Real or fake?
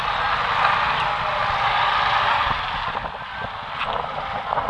real